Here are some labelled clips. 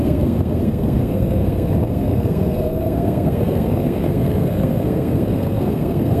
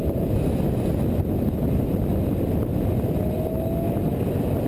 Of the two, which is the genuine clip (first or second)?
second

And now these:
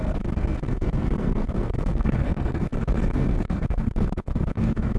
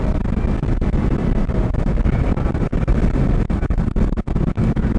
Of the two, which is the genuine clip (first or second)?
second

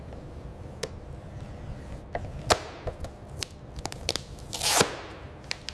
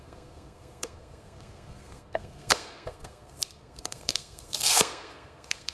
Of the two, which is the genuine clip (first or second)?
first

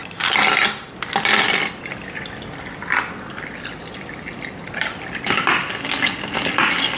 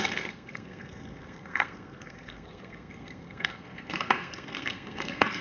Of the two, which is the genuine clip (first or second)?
first